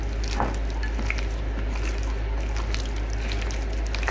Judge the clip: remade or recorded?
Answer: recorded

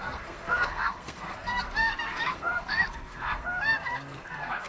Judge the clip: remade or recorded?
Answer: remade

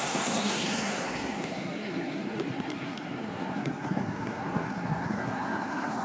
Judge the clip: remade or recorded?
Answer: remade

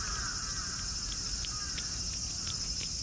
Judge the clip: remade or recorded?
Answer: recorded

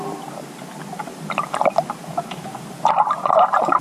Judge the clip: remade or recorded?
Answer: recorded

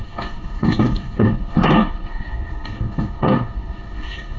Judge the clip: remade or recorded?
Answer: remade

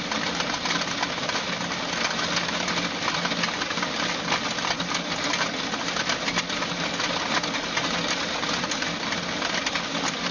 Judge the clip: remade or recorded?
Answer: recorded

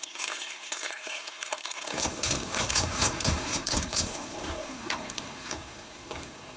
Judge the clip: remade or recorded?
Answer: remade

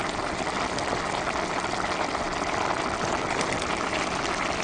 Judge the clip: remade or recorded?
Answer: recorded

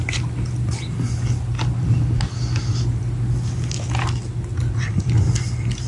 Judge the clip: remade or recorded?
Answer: recorded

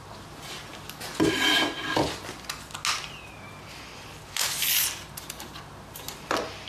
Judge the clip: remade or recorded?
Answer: recorded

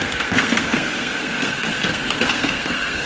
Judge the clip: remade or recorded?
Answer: remade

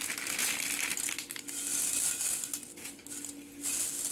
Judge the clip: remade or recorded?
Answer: recorded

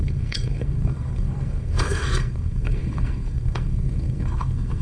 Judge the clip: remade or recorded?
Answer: remade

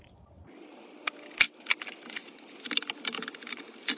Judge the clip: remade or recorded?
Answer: recorded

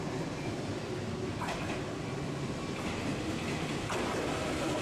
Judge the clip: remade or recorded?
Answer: recorded